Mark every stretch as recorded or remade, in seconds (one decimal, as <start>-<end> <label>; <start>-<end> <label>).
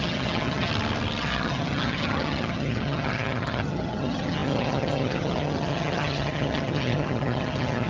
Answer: 0.0-0.7 remade; 0.7-1.2 recorded; 1.2-7.9 remade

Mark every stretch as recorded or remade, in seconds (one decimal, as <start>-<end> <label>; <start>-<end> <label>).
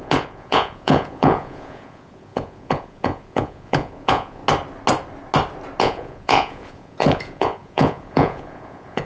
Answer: 0.0-4.4 remade; 4.4-5.8 recorded; 5.8-9.0 remade